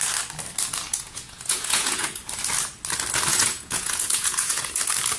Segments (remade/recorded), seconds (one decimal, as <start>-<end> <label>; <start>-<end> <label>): 0.0-0.9 recorded; 0.9-2.2 remade; 2.2-3.3 recorded; 3.3-4.8 remade; 4.8-5.2 recorded